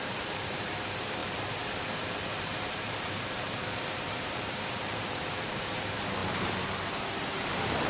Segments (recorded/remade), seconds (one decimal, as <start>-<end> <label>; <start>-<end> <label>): 0.0-7.9 remade